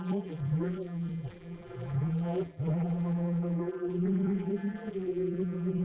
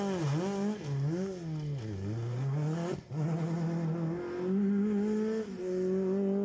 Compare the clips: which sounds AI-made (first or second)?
first